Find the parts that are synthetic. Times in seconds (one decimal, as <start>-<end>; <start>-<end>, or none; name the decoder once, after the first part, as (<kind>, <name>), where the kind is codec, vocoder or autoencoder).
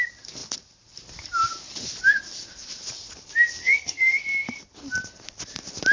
3.6-4.2 (codec, SNAC)